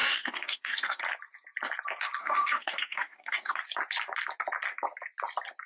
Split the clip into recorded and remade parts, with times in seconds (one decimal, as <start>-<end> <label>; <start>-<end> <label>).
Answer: 0.0-1.0 remade; 1.0-2.2 recorded; 2.2-3.6 remade; 3.6-5.7 recorded

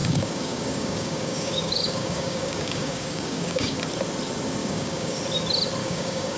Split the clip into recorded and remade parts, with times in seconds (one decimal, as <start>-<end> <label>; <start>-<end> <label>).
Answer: 0.0-3.8 remade; 3.8-4.6 recorded; 4.6-5.2 remade; 5.2-5.8 recorded; 5.8-6.4 remade

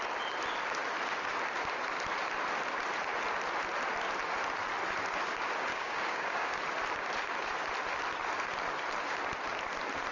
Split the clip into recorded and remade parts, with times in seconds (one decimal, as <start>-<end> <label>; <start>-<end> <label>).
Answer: 0.0-5.7 recorded; 5.7-6.6 remade; 6.6-10.1 recorded

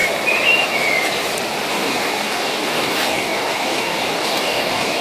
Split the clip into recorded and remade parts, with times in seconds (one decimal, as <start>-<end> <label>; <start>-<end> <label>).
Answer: 0.0-1.7 recorded; 1.7-5.0 remade

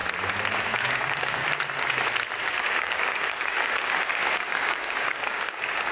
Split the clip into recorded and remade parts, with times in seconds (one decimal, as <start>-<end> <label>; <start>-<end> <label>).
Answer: 0.0-0.6 recorded; 0.6-1.4 remade; 1.4-2.4 recorded; 2.4-5.9 remade